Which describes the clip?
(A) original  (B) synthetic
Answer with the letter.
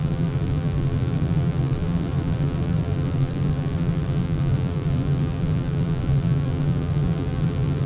B